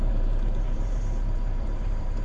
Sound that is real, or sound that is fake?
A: fake